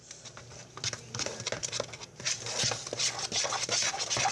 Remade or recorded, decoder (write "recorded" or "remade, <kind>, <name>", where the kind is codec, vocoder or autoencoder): recorded